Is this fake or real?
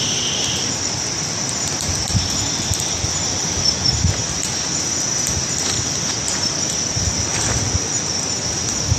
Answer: real